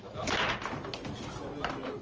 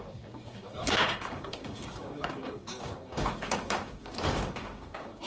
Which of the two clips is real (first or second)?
first